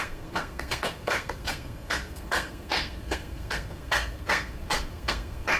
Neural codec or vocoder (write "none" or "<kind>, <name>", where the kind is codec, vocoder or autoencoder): codec, SNAC